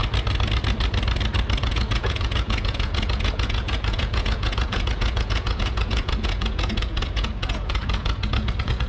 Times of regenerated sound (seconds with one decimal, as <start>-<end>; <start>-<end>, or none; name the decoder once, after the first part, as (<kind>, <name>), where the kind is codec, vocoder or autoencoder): 1.6-8.9 (vocoder, Vocos)